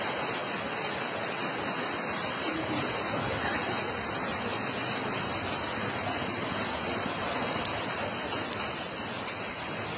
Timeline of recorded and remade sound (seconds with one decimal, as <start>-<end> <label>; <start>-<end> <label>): 0.0-10.0 recorded